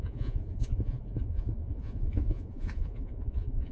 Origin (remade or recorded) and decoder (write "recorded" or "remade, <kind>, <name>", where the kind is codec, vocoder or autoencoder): remade, vocoder, Vocos